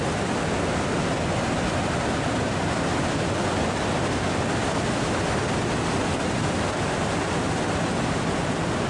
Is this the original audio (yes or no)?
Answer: yes